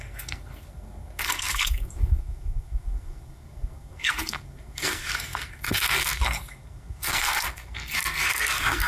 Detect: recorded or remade remade